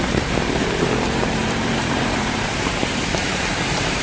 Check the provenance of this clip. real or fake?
fake